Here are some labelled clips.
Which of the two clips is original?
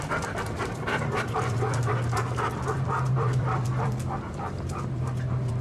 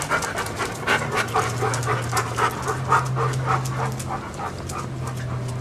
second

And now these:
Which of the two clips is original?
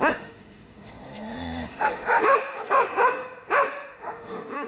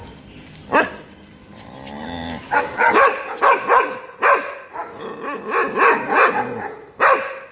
second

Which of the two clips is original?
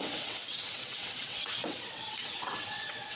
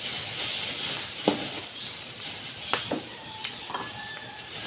second